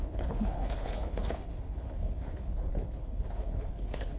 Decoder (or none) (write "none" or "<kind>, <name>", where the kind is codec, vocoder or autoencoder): codec, HILCodec